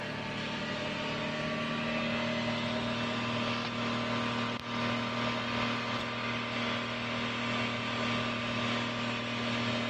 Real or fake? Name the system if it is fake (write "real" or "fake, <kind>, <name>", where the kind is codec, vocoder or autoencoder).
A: real